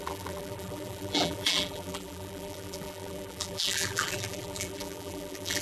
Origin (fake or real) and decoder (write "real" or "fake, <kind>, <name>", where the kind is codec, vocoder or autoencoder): fake, vocoder, BigVGAN v2